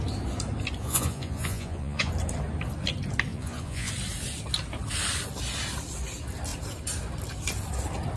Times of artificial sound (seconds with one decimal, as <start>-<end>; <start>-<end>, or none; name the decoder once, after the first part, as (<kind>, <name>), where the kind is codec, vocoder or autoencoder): 0.8-2.1 (vocoder, Vocos); 3.3-3.9